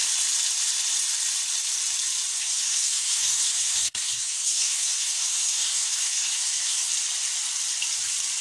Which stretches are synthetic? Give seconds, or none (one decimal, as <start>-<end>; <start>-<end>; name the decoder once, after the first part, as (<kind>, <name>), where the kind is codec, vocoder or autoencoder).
2.3-6.9 (codec, SNAC)